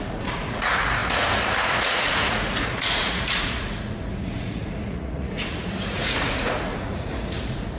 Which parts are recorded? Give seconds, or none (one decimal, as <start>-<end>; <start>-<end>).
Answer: none